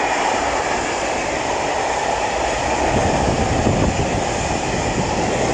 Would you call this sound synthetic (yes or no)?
no